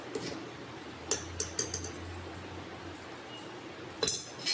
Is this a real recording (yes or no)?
yes